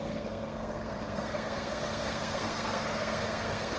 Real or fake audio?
fake